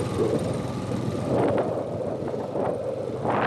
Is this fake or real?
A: real